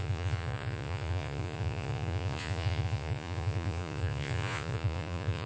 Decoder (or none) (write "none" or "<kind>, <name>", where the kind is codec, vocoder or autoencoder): vocoder, Vocos